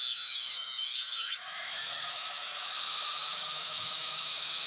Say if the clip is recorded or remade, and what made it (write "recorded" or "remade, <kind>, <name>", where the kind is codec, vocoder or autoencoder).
remade, autoencoder, DAC-VAE